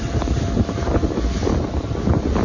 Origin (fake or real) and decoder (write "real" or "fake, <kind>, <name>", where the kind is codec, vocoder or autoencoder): real